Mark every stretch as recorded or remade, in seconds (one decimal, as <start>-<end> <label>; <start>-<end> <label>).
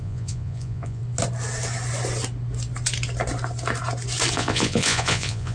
0.0-1.0 remade; 1.0-4.3 recorded; 4.3-5.5 remade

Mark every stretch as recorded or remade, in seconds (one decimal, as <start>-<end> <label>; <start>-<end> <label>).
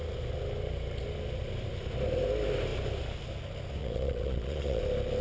0.0-3.8 recorded; 3.8-4.8 remade; 4.8-5.2 recorded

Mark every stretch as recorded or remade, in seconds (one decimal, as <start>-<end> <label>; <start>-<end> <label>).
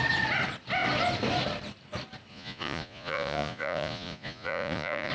0.0-2.3 recorded; 2.3-5.1 remade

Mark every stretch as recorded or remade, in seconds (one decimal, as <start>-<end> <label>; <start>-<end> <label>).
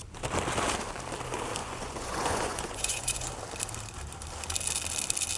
0.0-1.6 recorded; 1.6-3.3 remade; 3.3-5.4 recorded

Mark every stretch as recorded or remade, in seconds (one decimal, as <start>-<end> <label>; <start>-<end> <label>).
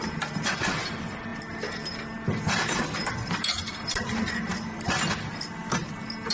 0.0-6.3 recorded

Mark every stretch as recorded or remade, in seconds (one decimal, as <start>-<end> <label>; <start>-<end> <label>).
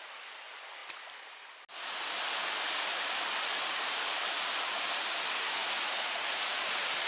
0.0-5.6 recorded; 5.6-6.6 remade; 6.6-7.1 recorded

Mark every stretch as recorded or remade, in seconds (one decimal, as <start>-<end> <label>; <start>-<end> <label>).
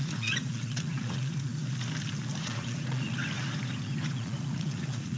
0.0-1.5 remade; 1.5-2.4 recorded; 2.4-3.2 remade; 3.2-4.0 recorded; 4.0-5.2 remade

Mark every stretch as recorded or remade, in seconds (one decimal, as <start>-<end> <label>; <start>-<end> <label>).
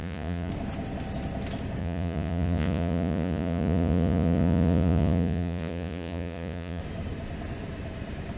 0.0-0.5 remade; 0.5-1.8 recorded; 1.8-6.8 remade; 6.8-8.4 recorded